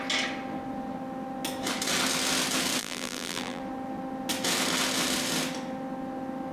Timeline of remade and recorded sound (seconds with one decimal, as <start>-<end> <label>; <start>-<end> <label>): 0.0-2.8 recorded; 2.8-3.6 remade; 3.6-6.5 recorded